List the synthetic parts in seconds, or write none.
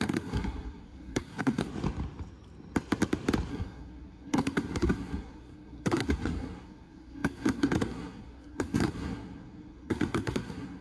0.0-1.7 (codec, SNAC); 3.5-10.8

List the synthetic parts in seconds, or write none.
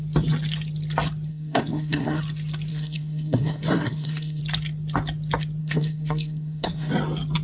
1.3-2.2 (codec, SNAC); 2.7-4.4; 5.6-6.9